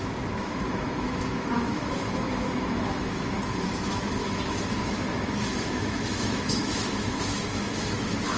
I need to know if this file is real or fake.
fake